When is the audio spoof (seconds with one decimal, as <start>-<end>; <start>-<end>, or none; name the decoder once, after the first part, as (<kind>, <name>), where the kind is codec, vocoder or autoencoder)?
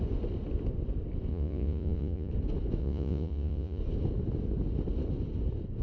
1.3-2.3 (vocoder, Vocos); 2.8-3.8